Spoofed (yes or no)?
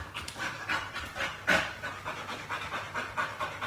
no